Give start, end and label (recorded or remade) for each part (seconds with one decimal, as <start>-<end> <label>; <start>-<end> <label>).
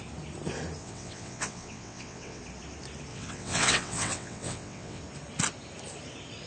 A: 0.0-0.8 recorded; 0.8-2.4 remade; 2.4-3.1 recorded; 3.1-5.0 remade; 5.0-6.5 recorded